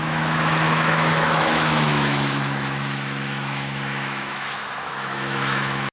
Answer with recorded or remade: remade